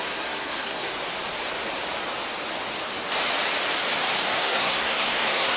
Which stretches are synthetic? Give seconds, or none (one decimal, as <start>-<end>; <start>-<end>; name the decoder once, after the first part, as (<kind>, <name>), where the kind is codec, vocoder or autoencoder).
0.0-0.9 (codec, SNAC); 4.3-5.6